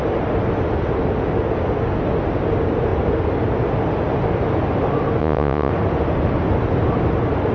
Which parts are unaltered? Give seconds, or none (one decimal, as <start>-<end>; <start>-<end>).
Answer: 0.0-5.2; 5.7-7.5